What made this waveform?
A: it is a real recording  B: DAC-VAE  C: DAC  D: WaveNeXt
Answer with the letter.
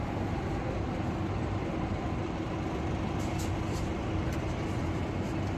A